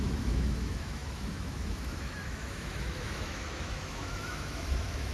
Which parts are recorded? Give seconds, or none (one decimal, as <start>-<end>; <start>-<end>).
none